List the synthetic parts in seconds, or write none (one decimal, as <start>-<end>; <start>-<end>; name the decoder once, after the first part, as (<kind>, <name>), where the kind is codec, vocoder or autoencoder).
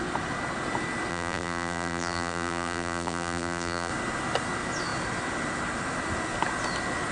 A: 1.1-3.9 (vocoder, BigVGAN v2)